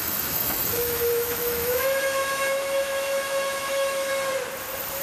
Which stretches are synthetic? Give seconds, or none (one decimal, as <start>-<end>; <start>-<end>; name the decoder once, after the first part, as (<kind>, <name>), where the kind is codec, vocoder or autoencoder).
0.0-4.1 (autoencoder, DAC-VAE)